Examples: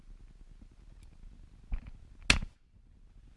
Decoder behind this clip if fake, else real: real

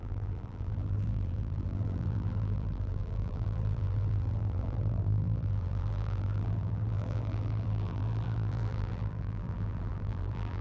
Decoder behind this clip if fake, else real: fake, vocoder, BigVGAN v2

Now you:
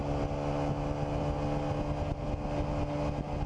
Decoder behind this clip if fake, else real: real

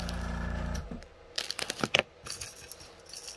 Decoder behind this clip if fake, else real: real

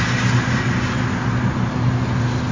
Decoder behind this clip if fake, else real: real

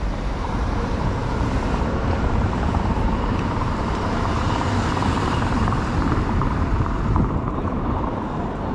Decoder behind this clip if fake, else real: fake, vocoder, BigVGAN v2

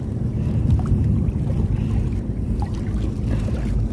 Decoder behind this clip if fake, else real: fake, vocoder, BigVGAN v2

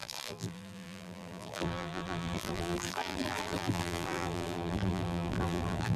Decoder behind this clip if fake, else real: fake, vocoder, BigVGAN v2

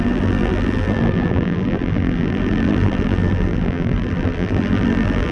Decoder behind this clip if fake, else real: fake, vocoder, BigVGAN v2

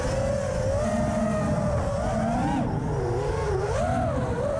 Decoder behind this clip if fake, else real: real